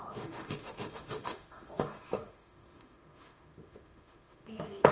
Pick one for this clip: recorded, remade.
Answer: remade